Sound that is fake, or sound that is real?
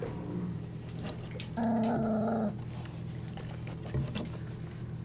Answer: real